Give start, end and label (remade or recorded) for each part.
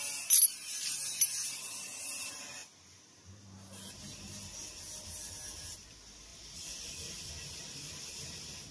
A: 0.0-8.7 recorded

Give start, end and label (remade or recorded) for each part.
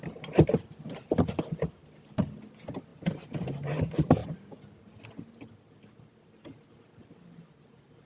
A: 0.0-8.1 recorded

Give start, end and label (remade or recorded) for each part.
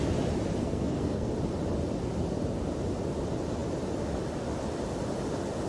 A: 0.0-0.6 recorded; 0.6-1.3 remade; 1.3-5.7 recorded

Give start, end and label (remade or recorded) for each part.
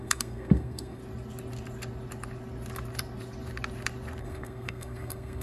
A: 0.0-1.0 remade; 1.0-4.2 recorded; 4.2-5.4 remade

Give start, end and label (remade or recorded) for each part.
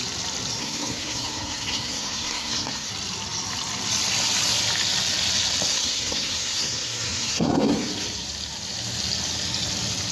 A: 0.0-0.6 recorded; 0.6-2.9 remade; 2.9-5.7 recorded; 5.7-7.9 remade; 7.9-10.1 recorded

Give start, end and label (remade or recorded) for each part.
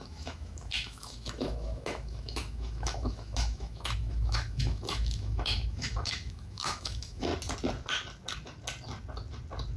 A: 0.0-7.3 remade; 7.3-9.8 recorded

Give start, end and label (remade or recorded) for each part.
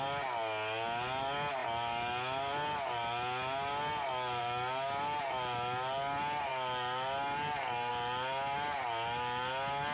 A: 0.0-9.9 recorded